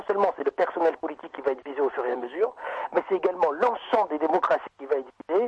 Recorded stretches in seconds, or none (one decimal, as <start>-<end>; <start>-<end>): 0.0-2.1; 3.0-5.5